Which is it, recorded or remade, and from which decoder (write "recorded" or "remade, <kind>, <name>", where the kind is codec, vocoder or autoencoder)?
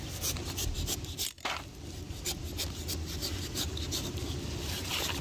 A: recorded